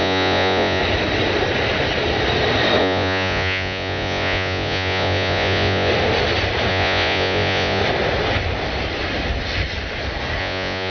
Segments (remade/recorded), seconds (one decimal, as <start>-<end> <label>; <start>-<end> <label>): 0.0-0.8 remade; 0.8-2.8 recorded; 2.8-5.9 remade; 5.9-6.7 recorded; 6.7-7.8 remade; 7.8-10.4 recorded; 10.4-10.9 remade